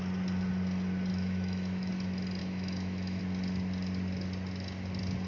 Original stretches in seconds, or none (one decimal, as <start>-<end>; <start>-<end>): 0.0-1.1; 1.9-2.4; 3.2-5.3